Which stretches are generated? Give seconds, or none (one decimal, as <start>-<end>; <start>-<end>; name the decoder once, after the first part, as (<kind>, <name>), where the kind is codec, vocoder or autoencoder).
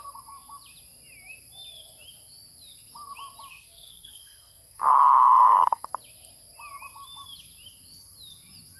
3.5-5.9 (codec, SNAC)